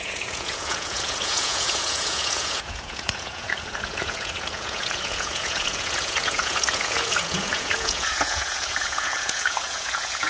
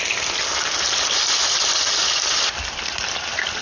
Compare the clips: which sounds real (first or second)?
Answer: second